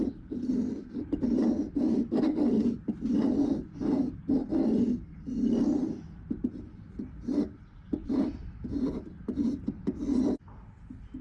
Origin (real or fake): real